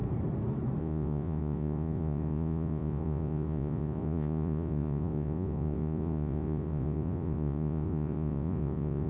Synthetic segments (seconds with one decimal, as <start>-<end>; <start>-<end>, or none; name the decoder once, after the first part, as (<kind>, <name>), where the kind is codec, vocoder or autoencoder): 0.8-9.1 (vocoder, Vocos)